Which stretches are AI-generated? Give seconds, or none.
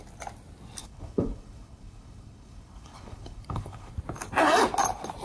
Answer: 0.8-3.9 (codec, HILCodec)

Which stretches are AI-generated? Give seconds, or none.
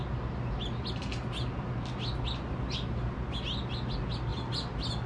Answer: none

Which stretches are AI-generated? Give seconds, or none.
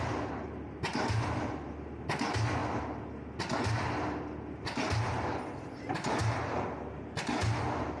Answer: none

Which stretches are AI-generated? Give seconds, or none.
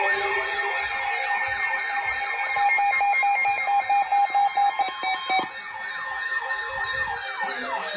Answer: none